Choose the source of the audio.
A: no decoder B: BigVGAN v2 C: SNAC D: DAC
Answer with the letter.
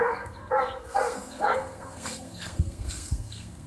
C